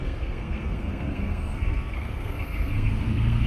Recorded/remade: remade